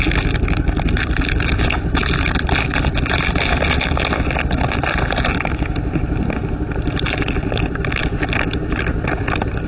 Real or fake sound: real